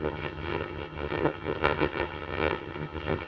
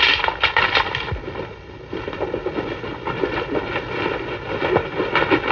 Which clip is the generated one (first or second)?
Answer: first